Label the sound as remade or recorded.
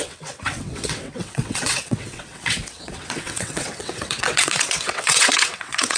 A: remade